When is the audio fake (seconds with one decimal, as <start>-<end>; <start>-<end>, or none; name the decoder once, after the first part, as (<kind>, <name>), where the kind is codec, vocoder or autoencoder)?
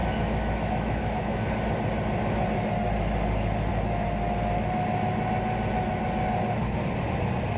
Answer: 0.0-1.6 (autoencoder, DAC-VAE)